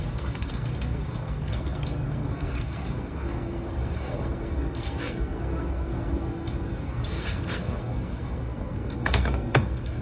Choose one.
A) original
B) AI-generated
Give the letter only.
B